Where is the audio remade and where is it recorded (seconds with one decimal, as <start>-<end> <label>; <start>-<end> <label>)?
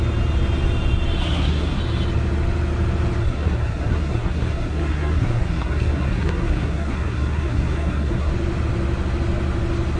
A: 0.0-1.2 recorded; 1.2-1.8 remade; 1.8-3.2 recorded; 3.2-8.3 remade; 8.3-10.0 recorded